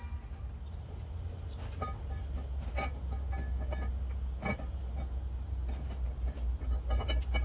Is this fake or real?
real